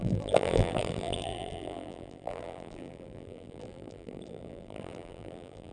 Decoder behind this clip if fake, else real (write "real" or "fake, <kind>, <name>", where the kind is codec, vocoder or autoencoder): fake, vocoder, BigVGAN v2